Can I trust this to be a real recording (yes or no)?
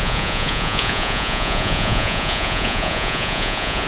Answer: no